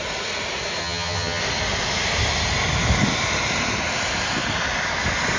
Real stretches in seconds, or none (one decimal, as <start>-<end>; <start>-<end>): 0.0-0.8; 1.4-5.4